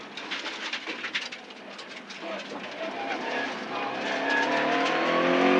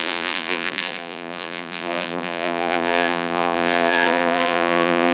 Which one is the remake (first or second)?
second